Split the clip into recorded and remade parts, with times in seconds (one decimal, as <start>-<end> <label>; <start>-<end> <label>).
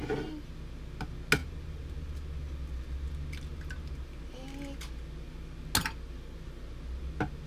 0.0-7.5 recorded